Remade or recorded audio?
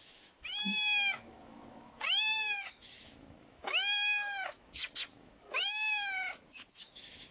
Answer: remade